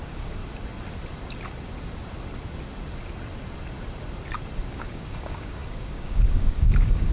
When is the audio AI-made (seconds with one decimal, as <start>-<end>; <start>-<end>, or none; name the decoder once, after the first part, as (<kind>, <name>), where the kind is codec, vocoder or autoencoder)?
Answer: 0.0-0.4 (codec, DAC); 4.7-7.1

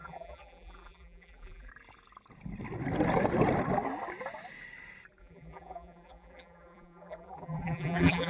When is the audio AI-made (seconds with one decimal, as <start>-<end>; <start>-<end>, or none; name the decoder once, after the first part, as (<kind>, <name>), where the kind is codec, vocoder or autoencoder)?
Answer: 0.0-1.7 (vocoder, BigVGAN v2); 5.2-8.3

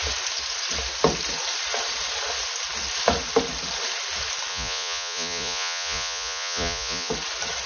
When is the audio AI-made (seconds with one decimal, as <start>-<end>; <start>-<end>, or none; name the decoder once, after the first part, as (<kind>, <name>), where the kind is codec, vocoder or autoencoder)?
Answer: 4.5-7.1 (vocoder, Vocos)

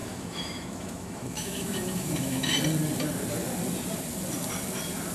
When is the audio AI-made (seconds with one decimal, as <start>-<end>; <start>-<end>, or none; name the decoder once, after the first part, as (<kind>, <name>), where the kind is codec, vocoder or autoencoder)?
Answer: 0.0-2.5 (autoencoder, DAC-VAE)

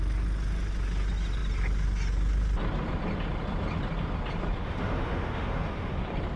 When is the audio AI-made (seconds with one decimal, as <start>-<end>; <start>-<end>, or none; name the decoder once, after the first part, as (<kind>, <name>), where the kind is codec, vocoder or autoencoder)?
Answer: 4.6-6.0 (autoencoder, DAC-VAE)

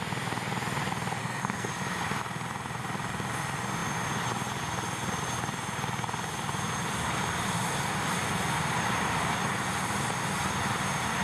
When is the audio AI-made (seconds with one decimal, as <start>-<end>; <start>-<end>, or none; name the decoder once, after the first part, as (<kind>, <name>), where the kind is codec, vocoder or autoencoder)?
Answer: 1.2-1.7 (codec, SNAC)

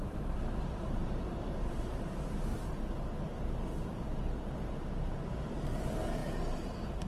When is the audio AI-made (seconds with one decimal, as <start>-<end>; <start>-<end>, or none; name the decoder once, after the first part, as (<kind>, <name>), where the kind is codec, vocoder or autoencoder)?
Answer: 0.0-7.1 (vocoder, BigVGAN v2)

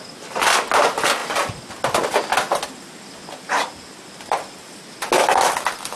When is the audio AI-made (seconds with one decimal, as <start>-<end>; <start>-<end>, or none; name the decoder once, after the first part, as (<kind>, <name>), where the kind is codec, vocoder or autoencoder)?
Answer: none